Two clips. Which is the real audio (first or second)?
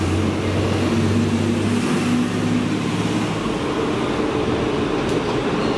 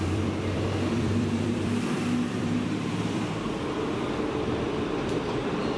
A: first